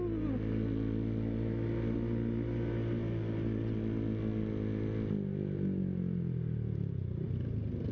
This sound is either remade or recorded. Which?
recorded